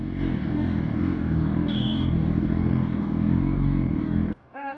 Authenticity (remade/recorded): remade